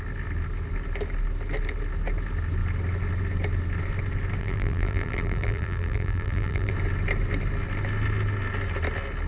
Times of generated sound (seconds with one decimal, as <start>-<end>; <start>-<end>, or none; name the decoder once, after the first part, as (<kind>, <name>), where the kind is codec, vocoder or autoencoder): 4.4-6.7 (vocoder, BigVGAN v2)